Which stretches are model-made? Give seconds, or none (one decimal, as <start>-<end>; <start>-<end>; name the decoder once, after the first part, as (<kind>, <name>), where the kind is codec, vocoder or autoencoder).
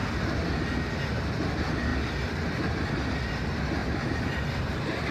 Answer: 3.8-5.1 (vocoder, BigVGAN v2)